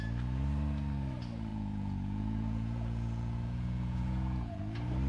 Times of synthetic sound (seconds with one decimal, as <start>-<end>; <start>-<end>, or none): 1.5-4.6